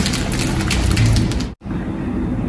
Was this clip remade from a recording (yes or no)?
no